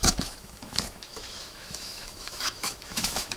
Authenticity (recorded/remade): remade